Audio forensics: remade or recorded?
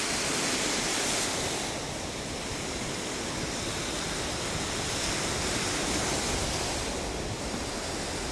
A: recorded